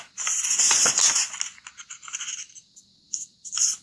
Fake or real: real